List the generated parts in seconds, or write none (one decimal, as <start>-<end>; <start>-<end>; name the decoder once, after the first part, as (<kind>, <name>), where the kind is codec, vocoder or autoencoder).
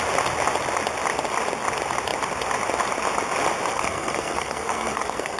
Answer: 3.7-5.4 (codec, SNAC)